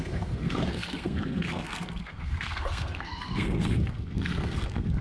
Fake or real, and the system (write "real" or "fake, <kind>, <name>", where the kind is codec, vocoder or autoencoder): fake, codec, SNAC